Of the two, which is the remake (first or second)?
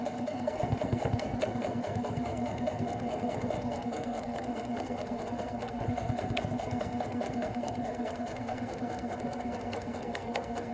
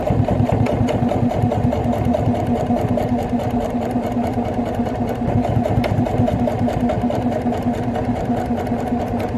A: first